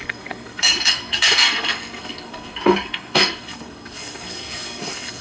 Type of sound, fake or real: fake